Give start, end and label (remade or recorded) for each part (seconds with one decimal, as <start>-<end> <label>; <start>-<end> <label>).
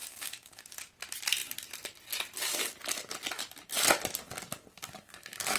0.0-0.6 remade; 0.6-4.7 recorded; 4.7-5.6 remade